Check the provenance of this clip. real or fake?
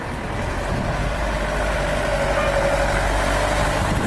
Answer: real